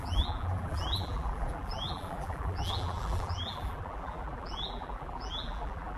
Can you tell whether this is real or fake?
fake